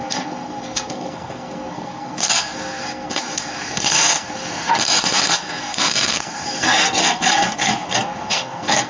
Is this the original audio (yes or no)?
no